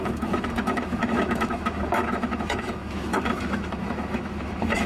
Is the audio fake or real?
fake